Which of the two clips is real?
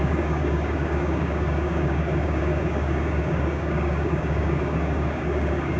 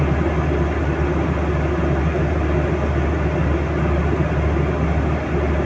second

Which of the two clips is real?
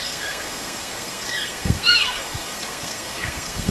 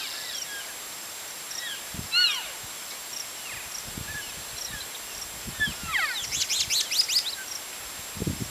second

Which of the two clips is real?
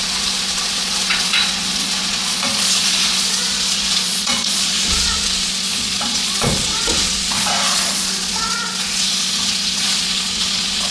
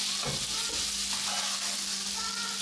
second